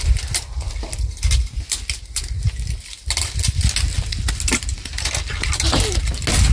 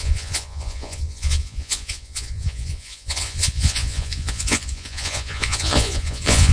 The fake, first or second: second